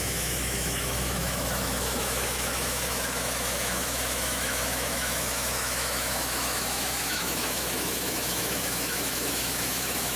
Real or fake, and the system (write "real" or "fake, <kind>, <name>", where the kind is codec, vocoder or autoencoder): fake, autoencoder, DAC-VAE